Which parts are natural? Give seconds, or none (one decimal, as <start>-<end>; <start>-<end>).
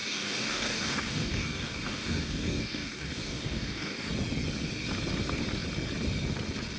4.1-6.8